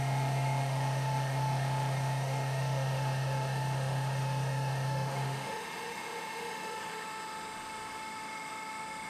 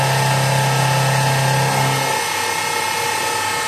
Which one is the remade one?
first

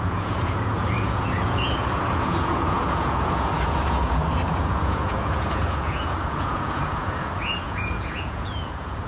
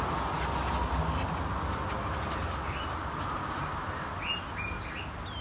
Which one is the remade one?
first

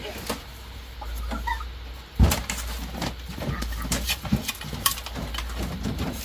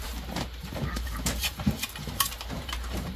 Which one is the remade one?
second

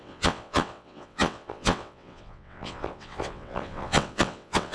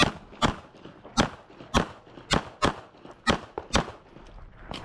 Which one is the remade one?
first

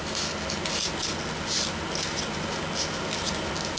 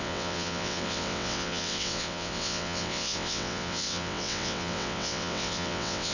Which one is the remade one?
second